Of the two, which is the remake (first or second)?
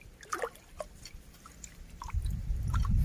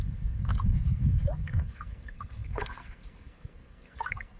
second